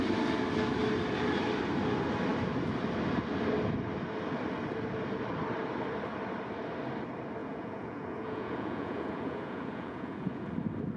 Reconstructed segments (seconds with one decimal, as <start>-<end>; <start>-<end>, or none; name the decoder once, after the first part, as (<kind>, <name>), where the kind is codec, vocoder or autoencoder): 7.4-10.5 (vocoder, Vocos)